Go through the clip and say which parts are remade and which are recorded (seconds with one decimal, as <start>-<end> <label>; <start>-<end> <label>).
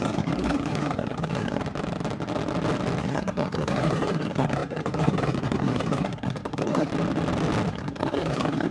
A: 0.0-1.6 remade; 1.6-3.0 recorded; 3.0-6.9 remade; 6.9-7.7 recorded; 7.7-8.7 remade